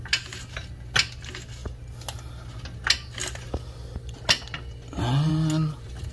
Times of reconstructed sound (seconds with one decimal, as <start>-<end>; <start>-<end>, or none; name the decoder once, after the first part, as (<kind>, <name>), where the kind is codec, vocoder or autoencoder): none